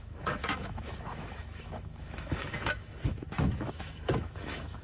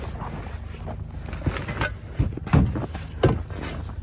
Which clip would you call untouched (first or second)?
second